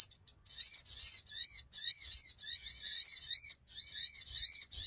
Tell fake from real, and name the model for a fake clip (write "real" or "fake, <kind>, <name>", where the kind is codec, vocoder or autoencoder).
fake, vocoder, Vocos